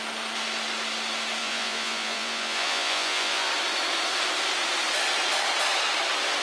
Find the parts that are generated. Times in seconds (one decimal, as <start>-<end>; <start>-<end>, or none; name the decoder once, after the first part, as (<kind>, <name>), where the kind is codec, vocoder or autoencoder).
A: 1.4-3.5 (vocoder, Vocos)